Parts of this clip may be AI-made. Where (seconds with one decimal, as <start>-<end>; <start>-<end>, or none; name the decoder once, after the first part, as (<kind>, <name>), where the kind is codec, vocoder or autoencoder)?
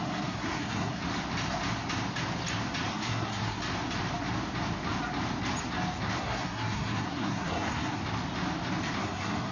0.0-1.0 (codec, SNAC); 2.9-3.6; 6.2-8.0; 9.0-9.5